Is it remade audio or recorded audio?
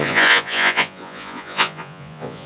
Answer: remade